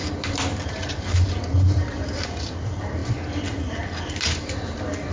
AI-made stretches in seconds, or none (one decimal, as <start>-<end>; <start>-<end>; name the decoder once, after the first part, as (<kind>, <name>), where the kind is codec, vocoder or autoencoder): none